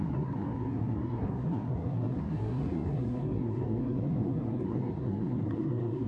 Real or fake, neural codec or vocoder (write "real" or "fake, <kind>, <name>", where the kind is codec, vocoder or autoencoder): fake, codec, SNAC